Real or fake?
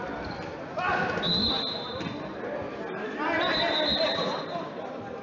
real